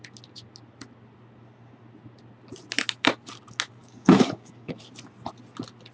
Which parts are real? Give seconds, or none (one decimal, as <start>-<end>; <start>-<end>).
0.0-3.8; 4.8-5.9